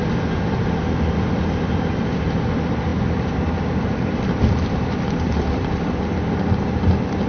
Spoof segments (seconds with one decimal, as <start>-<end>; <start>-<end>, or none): none